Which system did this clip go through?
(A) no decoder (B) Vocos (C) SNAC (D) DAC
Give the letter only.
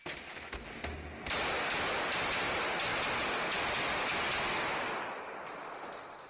A